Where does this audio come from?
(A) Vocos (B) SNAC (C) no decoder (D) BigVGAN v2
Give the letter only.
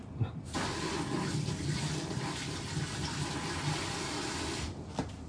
C